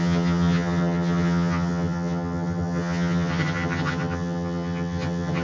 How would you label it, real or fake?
fake